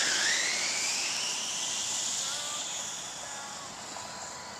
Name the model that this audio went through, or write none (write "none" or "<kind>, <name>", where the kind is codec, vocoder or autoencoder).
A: none